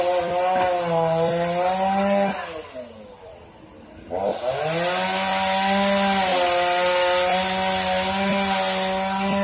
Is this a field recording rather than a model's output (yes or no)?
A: yes